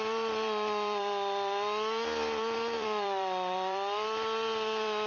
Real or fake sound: fake